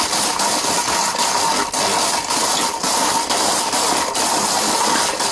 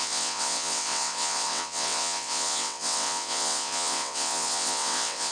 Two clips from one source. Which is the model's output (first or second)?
second